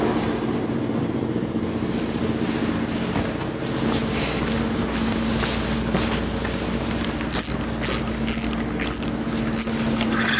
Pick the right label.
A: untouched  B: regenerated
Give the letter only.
A